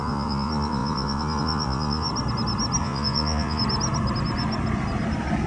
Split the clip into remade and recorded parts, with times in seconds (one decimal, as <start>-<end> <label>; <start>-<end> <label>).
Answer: 0.0-2.1 remade; 2.1-2.8 recorded; 2.8-3.6 remade; 3.6-5.5 recorded